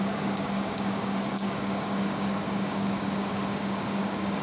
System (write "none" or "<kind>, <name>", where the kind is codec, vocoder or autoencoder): codec, DAC